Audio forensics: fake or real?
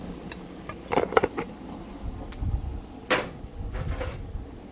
real